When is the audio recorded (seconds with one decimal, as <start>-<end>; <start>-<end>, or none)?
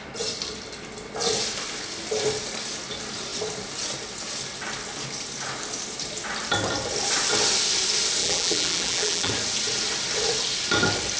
0.0-8.2; 9.3-11.2